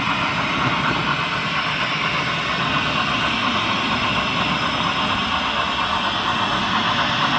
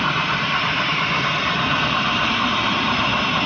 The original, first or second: first